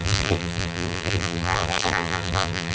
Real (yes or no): no